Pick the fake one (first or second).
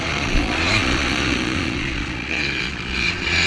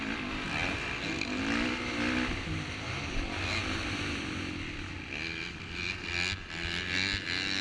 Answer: first